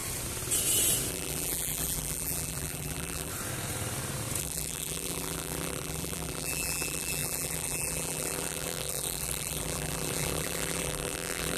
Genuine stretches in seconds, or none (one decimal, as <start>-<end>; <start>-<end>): 0.0-1.1; 3.3-4.4